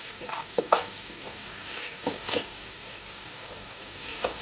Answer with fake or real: fake